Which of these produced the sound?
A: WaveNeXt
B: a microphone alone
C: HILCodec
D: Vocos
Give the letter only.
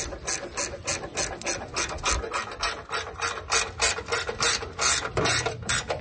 B